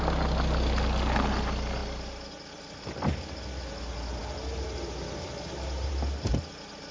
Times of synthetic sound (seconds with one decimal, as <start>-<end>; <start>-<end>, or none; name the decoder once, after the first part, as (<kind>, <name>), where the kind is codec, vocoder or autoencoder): none